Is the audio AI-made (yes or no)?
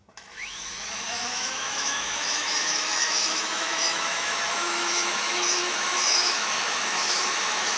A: yes